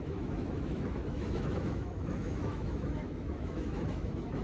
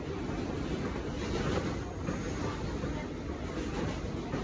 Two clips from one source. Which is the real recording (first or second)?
second